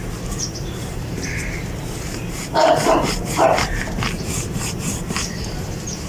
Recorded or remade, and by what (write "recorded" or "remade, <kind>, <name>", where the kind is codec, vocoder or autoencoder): remade, vocoder, BigVGAN v2